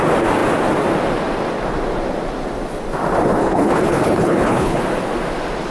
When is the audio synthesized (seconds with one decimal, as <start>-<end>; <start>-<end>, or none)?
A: 3.4-4.8